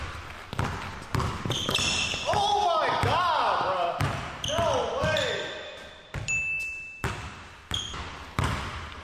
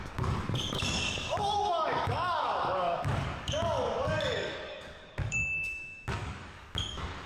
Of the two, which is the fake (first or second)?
second